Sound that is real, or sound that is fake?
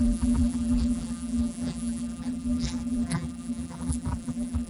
fake